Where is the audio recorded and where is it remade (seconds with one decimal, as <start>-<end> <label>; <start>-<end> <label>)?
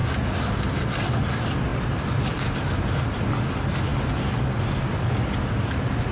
0.0-6.1 recorded